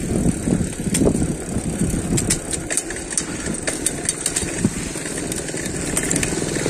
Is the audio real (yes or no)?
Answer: yes